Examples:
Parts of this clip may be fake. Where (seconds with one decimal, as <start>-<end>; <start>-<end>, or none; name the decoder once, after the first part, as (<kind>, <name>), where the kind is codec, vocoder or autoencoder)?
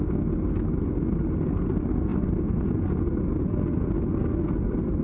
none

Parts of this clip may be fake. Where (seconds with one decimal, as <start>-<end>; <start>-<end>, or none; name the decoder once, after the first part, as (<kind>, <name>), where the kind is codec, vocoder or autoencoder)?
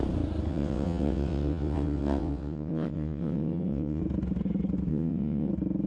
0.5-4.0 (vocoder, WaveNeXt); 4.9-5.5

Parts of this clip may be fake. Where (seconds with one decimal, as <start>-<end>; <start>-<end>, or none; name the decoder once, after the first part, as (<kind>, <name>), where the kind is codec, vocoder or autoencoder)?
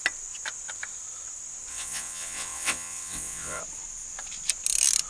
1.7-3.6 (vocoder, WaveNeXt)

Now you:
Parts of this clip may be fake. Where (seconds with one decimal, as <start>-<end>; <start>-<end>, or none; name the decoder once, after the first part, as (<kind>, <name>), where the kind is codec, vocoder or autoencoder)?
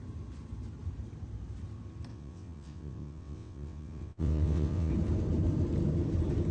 2.1-4.9 (vocoder, WaveNeXt)